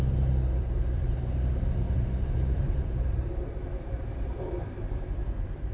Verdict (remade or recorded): remade